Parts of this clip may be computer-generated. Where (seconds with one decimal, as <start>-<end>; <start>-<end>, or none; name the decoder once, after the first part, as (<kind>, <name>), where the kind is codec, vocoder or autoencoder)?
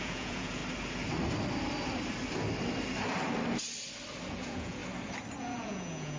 0.0-0.6 (vocoder, Vocos); 4.3-4.8; 5.4-6.2